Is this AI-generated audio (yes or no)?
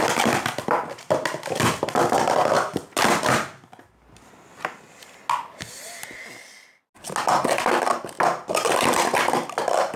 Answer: no